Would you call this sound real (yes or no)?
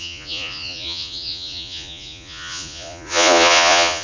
no